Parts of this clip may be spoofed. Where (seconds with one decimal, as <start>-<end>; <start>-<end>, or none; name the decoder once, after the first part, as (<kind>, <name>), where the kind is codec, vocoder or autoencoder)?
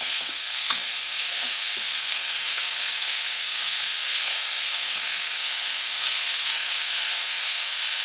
0.0-8.0 (codec, SNAC)